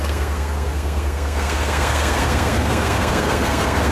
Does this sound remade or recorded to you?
remade